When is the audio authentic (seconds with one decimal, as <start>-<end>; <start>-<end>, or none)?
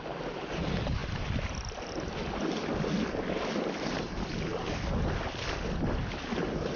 0.0-6.8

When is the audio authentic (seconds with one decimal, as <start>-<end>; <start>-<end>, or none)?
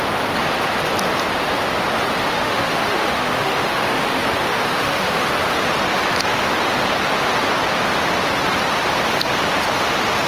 0.0-2.2; 5.3-10.3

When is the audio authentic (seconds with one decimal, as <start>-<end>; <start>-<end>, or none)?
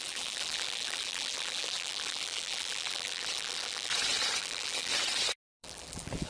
3.9-4.4; 4.9-5.5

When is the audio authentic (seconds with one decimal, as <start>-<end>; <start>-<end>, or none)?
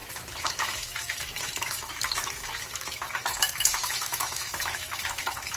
none